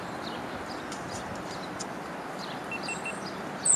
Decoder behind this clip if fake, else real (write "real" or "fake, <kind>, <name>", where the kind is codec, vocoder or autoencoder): real